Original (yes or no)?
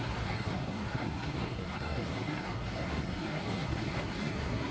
no